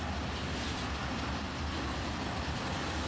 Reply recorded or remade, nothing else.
remade